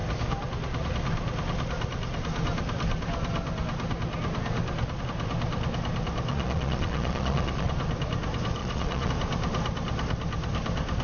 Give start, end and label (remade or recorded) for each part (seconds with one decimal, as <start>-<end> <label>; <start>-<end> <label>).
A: 0.0-6.3 recorded; 6.3-7.7 remade; 7.7-8.6 recorded; 8.6-9.1 remade; 9.1-11.0 recorded